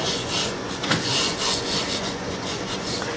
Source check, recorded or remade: remade